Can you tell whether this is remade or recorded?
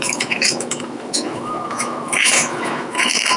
remade